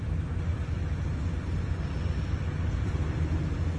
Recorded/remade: recorded